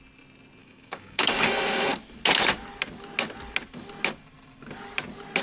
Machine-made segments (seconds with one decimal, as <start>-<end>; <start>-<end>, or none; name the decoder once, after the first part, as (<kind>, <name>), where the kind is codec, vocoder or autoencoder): 0.6-1.3 (autoencoder, DAC-VAE)